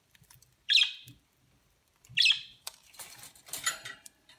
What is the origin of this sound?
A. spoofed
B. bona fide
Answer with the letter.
A